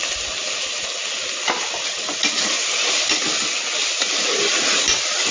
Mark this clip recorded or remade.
recorded